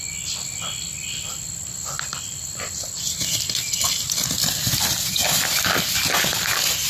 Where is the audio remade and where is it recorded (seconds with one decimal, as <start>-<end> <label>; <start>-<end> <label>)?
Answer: 0.0-1.3 recorded; 1.3-5.1 remade; 5.1-6.9 recorded